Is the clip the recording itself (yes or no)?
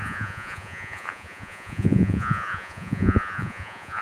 no